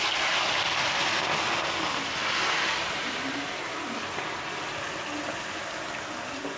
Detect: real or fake real